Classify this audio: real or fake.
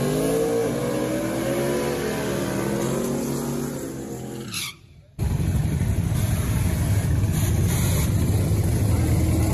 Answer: real